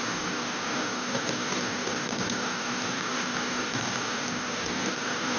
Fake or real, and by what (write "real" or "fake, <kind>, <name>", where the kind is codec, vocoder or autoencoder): fake, codec, DAC